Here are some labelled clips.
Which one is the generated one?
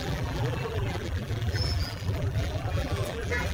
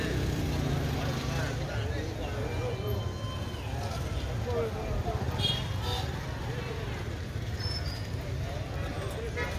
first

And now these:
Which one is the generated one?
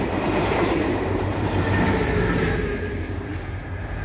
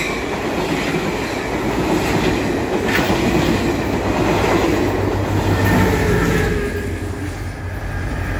first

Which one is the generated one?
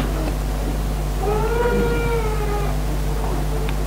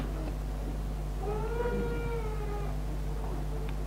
first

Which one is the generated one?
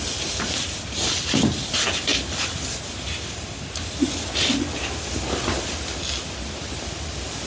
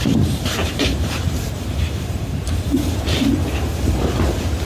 second